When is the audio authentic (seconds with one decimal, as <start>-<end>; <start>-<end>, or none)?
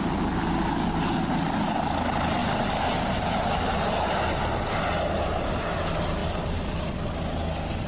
0.0-7.9